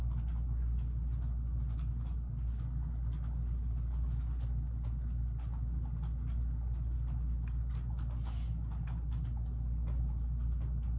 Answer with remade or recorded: recorded